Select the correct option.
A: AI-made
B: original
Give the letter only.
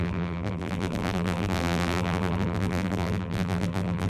A